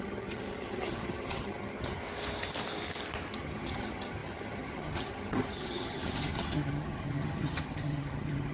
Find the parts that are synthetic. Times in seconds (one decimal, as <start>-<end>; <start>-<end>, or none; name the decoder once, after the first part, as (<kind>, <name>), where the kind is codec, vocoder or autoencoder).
0.0-2.0 (vocoder, HiFi-GAN); 3.3-8.5